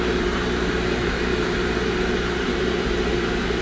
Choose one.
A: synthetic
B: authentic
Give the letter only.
A